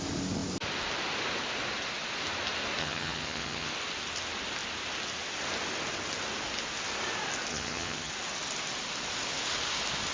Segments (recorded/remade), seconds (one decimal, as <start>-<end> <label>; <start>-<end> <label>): 0.0-2.8 recorded; 2.8-3.7 remade; 3.7-7.5 recorded; 7.5-8.1 remade; 8.1-10.1 recorded